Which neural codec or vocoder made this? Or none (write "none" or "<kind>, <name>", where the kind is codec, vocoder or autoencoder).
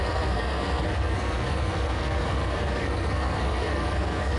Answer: codec, SNAC